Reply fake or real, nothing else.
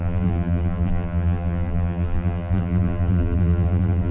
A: fake